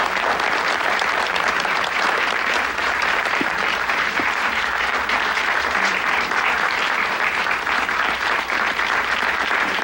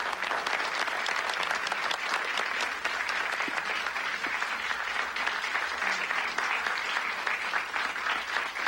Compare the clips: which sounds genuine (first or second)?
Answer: second